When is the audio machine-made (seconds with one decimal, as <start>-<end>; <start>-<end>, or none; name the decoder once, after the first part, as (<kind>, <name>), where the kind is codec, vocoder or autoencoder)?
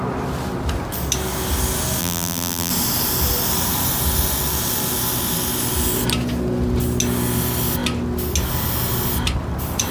2.0-2.7 (vocoder, BigVGAN v2)